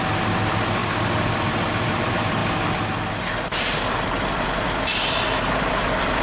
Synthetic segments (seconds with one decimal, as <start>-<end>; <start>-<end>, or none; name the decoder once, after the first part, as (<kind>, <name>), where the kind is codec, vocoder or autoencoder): 0.0-2.4 (vocoder, BigVGAN v2); 3.1-6.2

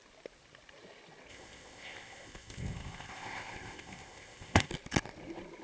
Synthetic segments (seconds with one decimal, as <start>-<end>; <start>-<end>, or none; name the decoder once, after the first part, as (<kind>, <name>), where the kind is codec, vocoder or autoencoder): 1.3-4.7 (codec, ZipCodec)

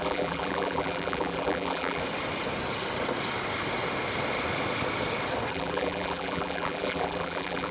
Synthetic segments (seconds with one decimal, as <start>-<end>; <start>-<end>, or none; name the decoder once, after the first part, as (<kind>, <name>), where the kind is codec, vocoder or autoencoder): 0.0-2.0 (vocoder, BigVGAN v2); 5.5-7.7

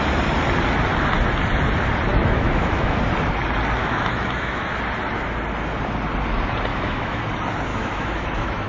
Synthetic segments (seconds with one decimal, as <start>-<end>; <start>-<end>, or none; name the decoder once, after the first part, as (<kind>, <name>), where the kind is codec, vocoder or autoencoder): 2.1-3.0 (autoencoder, DAC-VAE); 3.8-4.7; 6.7-7.2; 7.7-8.7